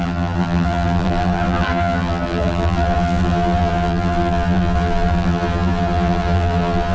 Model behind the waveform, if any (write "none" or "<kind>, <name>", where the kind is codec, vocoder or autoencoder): vocoder, BigVGAN v2